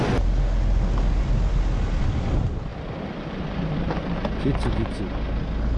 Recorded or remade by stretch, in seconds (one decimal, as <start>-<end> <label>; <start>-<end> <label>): 0.0-2.7 recorded; 2.7-3.4 remade; 3.4-5.8 recorded